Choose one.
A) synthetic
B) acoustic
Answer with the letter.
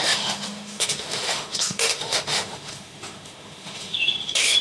A